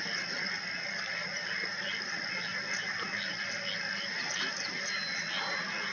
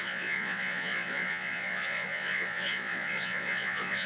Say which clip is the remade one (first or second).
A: second